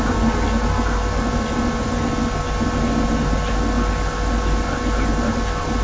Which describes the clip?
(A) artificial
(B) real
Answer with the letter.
B